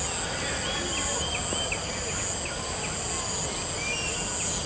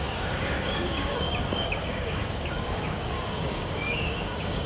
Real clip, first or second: first